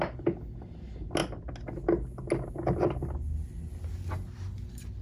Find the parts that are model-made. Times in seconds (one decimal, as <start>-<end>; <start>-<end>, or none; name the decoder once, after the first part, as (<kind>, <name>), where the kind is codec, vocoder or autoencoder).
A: none